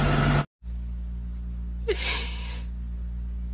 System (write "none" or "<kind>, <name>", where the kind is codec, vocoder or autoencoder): none